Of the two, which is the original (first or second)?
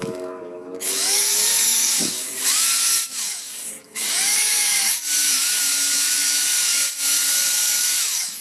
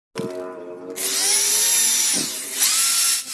second